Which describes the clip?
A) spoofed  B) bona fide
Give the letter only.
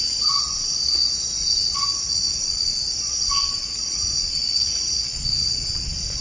A